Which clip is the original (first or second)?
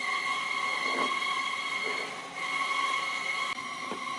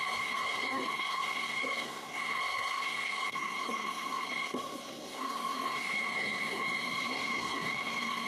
first